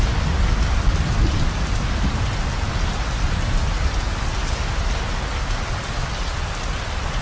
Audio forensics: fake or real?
real